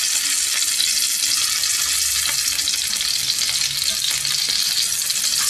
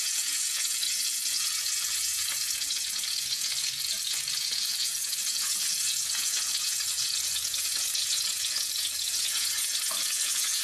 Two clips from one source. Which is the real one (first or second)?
first